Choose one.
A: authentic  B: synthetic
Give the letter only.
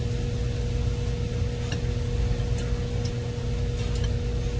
A